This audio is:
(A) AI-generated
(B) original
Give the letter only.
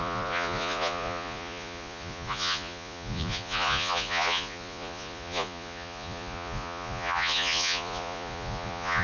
A